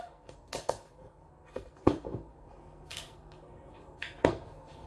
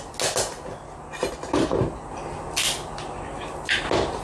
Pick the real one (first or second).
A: second